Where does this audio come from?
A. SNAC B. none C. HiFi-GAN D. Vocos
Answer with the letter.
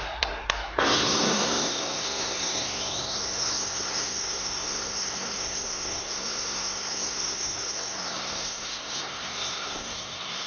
A